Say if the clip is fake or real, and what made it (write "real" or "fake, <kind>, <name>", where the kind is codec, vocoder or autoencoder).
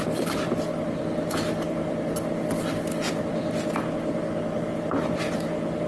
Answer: real